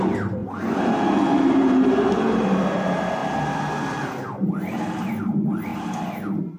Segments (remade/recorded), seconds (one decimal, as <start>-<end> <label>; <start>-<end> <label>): 0.0-6.6 recorded